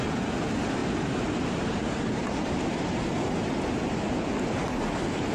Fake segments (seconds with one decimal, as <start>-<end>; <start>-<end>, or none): 0.8-2.6